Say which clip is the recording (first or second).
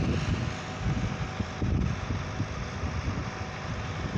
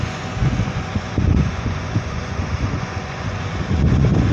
first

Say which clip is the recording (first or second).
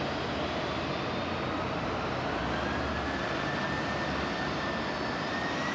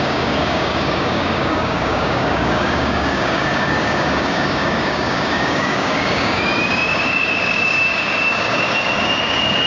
first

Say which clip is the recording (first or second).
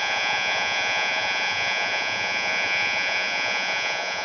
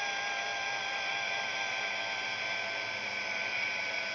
second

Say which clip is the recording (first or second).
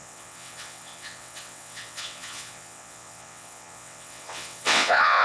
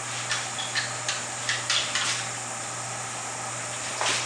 second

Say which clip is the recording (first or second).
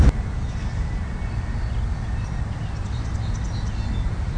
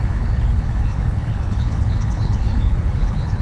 first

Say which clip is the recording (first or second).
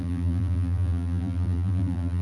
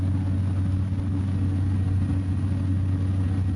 second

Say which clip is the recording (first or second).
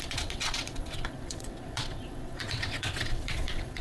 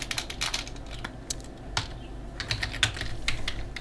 second